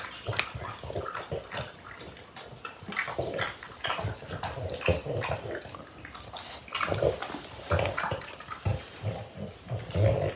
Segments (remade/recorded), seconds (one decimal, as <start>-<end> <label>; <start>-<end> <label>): 0.0-10.4 recorded

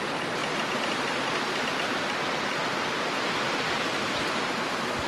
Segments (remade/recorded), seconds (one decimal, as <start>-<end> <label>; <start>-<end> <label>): 0.0-5.1 recorded

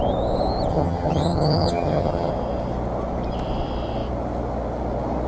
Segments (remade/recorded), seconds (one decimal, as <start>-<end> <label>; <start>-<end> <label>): 0.0-0.7 recorded; 0.7-2.3 remade; 2.3-5.3 recorded

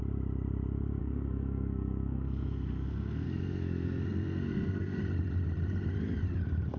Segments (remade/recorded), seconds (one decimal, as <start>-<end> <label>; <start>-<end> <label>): 0.0-1.0 recorded; 1.0-5.0 remade; 5.0-6.8 recorded

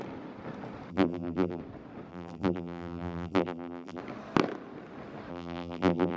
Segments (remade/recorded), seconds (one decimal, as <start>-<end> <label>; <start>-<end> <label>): 0.0-0.9 recorded; 0.9-1.6 remade; 1.6-2.1 recorded; 2.1-4.0 remade; 4.0-5.3 recorded; 5.3-6.2 remade

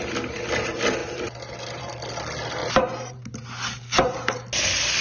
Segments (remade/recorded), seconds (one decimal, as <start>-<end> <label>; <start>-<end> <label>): 0.0-1.0 recorded; 1.0-1.8 remade; 1.8-2.6 recorded; 2.6-3.2 remade; 3.2-5.0 recorded